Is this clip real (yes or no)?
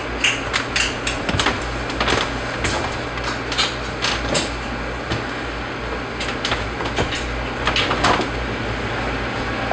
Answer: yes